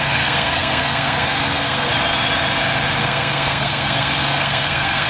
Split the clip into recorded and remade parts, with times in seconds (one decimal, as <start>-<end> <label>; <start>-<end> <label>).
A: 0.0-1.9 remade; 1.9-3.0 recorded; 3.0-5.1 remade